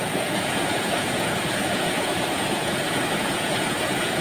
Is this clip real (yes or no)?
no